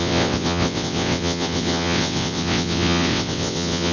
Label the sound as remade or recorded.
remade